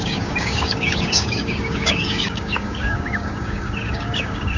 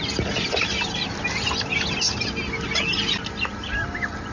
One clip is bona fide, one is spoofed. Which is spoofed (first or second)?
first